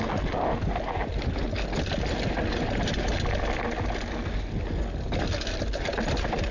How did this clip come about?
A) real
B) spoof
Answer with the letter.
A